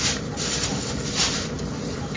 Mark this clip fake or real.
real